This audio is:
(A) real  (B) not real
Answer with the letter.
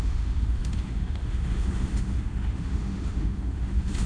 B